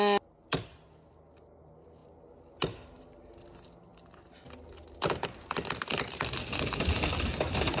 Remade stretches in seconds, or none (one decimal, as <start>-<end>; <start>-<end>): none